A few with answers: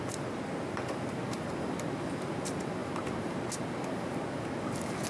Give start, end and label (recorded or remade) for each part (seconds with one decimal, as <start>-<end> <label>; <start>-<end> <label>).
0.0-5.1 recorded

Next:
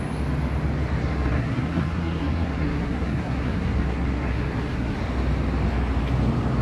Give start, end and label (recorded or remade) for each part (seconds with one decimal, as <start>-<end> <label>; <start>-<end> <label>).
0.0-1.0 recorded; 1.0-5.0 remade; 5.0-6.6 recorded

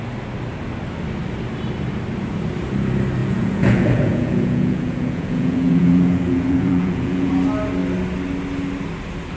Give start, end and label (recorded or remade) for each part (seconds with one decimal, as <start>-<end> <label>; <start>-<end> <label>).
0.0-3.2 recorded; 3.2-7.3 remade; 7.3-9.4 recorded